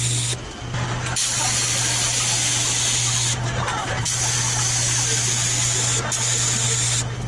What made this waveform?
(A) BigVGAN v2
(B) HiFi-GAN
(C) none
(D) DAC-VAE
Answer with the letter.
C